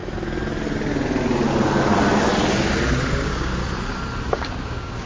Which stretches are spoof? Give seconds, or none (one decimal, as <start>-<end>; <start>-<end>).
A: 3.1-3.6; 4.3-5.1